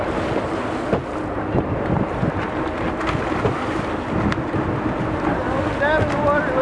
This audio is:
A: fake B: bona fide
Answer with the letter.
B